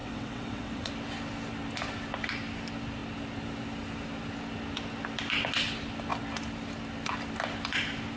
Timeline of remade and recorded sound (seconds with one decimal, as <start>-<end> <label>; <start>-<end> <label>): 0.0-0.9 remade; 0.9-8.2 recorded